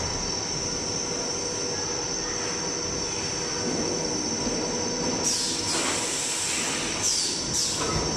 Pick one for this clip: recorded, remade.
recorded